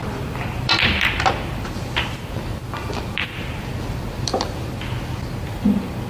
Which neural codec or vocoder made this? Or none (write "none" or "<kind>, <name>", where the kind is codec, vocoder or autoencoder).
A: vocoder, BigVGAN v2